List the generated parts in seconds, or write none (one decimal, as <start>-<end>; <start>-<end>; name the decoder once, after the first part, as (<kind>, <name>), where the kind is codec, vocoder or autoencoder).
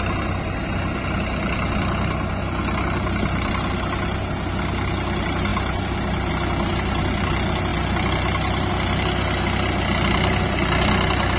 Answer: none